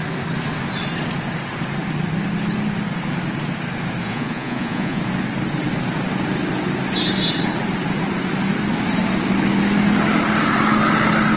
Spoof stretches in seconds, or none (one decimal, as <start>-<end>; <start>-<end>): 4.0-5.0